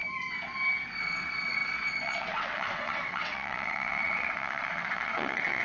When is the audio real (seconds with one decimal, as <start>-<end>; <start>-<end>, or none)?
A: 0.0-1.0